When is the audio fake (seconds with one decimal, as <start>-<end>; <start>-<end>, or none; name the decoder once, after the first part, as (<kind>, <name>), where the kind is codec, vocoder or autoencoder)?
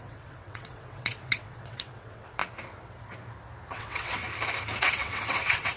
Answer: 0.0-2.4 (vocoder, WaveNeXt); 3.7-4.2; 4.8-5.8